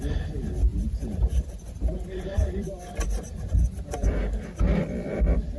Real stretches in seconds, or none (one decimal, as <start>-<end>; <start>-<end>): 0.0-0.7; 4.1-5.6